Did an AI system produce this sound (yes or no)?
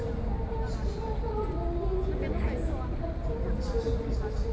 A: no